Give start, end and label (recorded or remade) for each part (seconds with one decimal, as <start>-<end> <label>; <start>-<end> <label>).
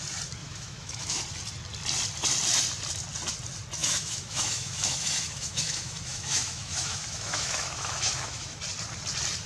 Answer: 0.0-0.4 recorded; 0.4-1.2 remade; 1.2-3.8 recorded; 3.8-8.6 remade; 8.6-9.5 recorded